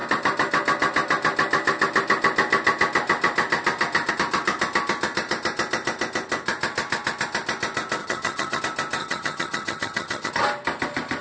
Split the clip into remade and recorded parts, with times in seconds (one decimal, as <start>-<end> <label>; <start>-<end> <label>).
0.0-8.0 recorded; 8.0-8.6 remade; 8.6-9.0 recorded; 9.0-10.3 remade; 10.3-11.2 recorded